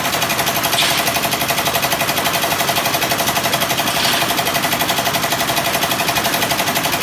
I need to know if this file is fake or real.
real